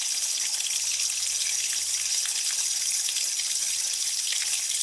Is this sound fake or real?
fake